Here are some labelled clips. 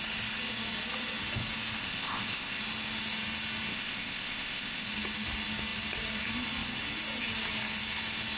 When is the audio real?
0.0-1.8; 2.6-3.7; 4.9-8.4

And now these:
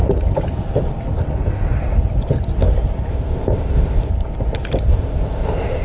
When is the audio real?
0.0-3.1; 4.1-4.9

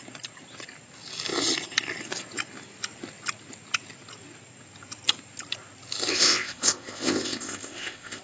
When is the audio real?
0.0-6.1

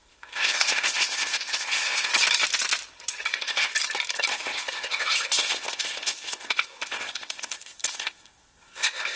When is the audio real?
2.1-3.3; 3.7-4.3

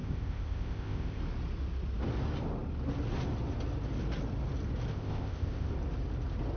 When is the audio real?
1.2-4.9; 5.7-6.6

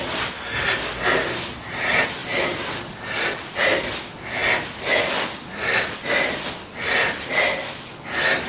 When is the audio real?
0.0-8.5

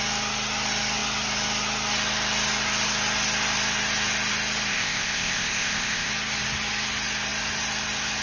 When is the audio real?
0.0-4.7; 6.1-8.2